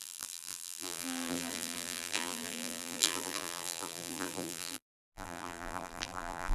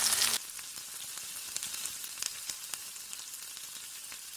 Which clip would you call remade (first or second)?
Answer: first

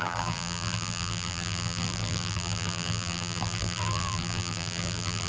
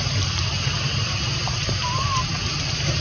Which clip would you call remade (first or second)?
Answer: first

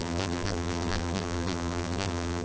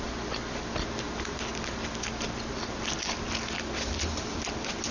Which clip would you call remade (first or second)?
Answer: first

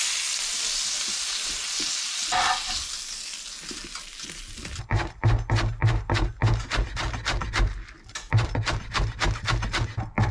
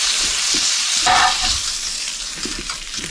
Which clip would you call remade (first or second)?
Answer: second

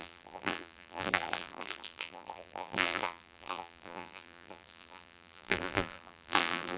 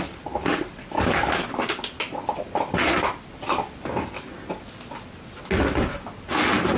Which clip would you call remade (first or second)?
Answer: first